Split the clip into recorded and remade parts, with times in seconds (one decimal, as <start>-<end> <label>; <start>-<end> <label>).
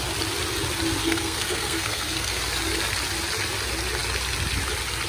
0.0-1.0 recorded; 1.0-2.4 remade; 2.4-5.1 recorded